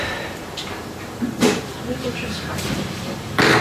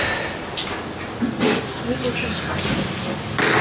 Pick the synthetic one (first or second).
first